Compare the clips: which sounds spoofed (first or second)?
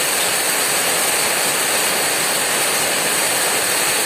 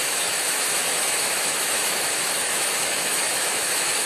second